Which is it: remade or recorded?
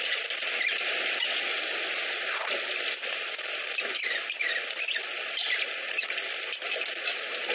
recorded